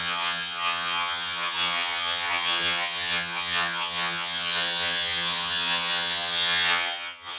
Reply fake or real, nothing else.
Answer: fake